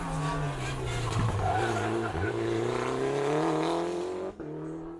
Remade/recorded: recorded